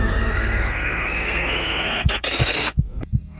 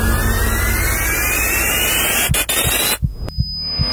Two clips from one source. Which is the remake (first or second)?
first